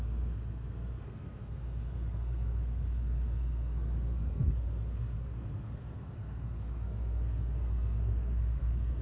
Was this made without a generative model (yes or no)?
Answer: no